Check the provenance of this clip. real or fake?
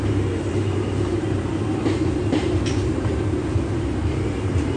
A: fake